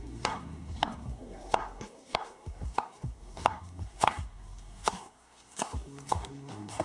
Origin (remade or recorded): remade